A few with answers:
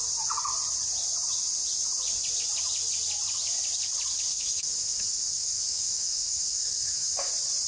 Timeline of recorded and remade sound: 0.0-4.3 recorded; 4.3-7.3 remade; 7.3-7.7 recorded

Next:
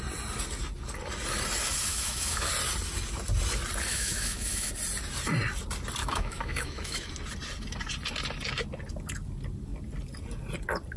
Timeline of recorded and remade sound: 0.0-1.9 recorded; 1.9-2.5 remade; 2.5-3.9 recorded; 3.9-4.7 remade; 4.7-6.0 recorded; 6.0-7.1 remade; 7.1-11.0 recorded

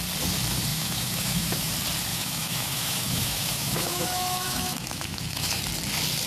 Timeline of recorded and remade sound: 0.0-0.7 recorded; 0.7-1.7 remade; 1.7-2.1 recorded; 2.1-5.6 remade; 5.6-6.3 recorded

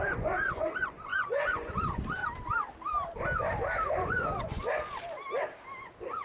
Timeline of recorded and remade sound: 0.0-2.2 remade; 2.2-3.9 recorded; 3.9-4.9 remade; 4.9-5.8 recorded; 5.8-6.2 remade